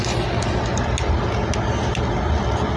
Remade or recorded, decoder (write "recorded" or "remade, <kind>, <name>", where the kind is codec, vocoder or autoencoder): recorded